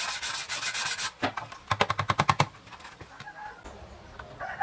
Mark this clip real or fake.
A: real